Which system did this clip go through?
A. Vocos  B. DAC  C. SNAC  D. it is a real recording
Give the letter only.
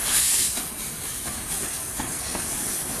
C